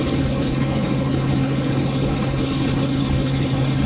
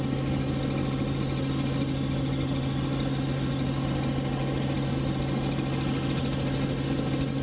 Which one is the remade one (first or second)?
first